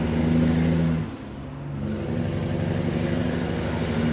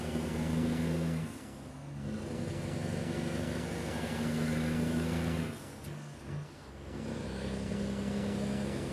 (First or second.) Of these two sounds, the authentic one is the first